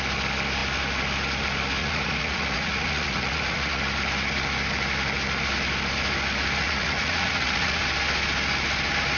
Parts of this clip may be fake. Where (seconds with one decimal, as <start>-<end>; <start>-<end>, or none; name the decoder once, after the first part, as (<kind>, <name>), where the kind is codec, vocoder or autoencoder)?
1.8-3.8 (vocoder, Vocos); 6.6-7.8